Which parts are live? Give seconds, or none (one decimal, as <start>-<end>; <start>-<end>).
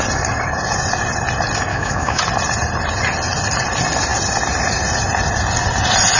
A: 0.0-1.7; 2.2-6.2